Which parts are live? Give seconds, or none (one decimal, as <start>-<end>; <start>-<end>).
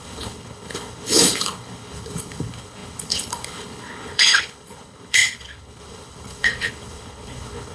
none